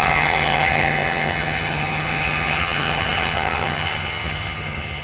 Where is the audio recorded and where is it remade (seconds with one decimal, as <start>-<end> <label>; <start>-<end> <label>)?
0.0-5.0 remade